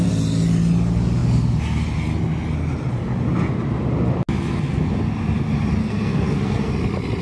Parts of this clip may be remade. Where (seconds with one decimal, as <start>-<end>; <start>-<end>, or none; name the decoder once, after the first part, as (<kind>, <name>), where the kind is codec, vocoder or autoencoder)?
5.8-6.7 (codec, SNAC)